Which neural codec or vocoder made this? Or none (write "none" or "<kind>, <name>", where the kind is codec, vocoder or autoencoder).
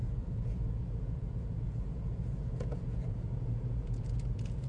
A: vocoder, Vocos